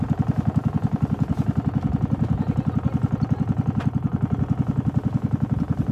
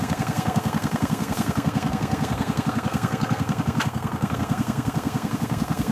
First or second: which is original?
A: first